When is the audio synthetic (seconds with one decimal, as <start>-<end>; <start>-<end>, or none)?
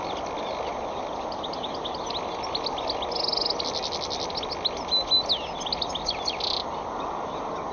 none